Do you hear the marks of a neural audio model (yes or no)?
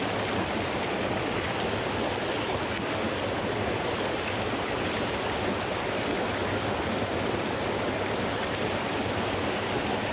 no